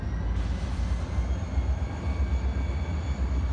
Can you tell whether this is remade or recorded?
recorded